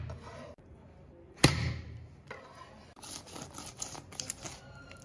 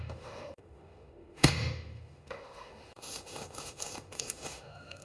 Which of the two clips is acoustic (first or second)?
first